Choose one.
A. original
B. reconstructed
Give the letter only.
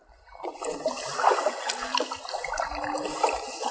A